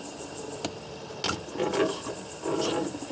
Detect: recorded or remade recorded